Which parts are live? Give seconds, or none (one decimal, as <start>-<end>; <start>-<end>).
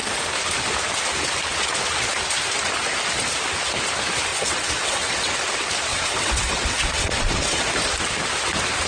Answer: 0.0-4.3; 5.4-5.9; 7.7-8.9